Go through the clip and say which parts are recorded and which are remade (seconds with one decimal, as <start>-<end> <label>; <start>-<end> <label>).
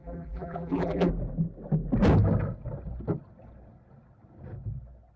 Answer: 0.0-1.1 remade; 1.1-5.2 recorded